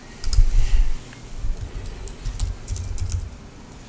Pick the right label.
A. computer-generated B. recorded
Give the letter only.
B